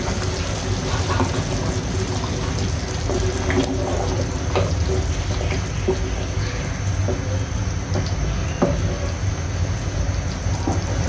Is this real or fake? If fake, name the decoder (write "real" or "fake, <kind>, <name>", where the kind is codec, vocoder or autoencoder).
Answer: real